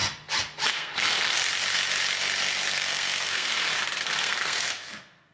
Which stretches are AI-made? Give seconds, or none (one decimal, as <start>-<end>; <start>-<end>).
0.7-1.4; 2.7-3.5; 4.0-5.3